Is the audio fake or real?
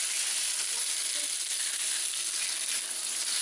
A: real